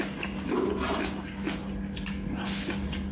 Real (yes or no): yes